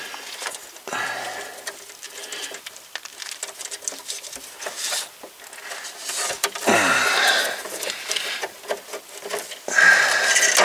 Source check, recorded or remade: recorded